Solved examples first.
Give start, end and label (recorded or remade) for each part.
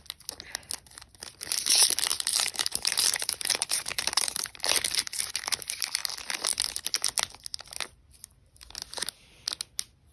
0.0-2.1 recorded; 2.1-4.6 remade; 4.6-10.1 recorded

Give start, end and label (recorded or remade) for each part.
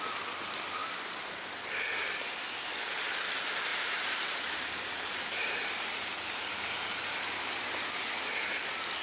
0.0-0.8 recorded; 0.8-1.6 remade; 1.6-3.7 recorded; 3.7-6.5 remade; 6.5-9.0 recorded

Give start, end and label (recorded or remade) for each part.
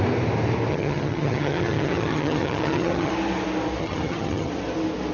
0.0-0.7 recorded; 0.7-3.1 remade; 3.1-3.8 recorded; 3.8-4.5 remade; 4.5-5.1 recorded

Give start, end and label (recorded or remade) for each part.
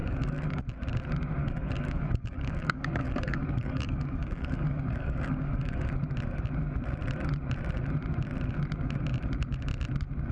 0.0-0.6 remade; 0.6-1.4 recorded; 1.4-5.9 remade; 5.9-10.3 recorded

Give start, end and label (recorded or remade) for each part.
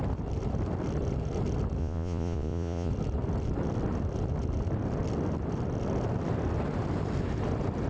0.0-1.8 recorded; 1.8-2.9 remade; 2.9-7.9 recorded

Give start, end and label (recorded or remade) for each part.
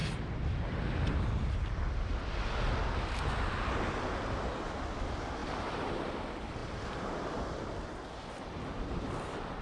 0.0-5.4 recorded; 5.4-5.9 remade; 5.9-9.6 recorded